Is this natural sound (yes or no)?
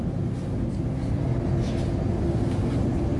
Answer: yes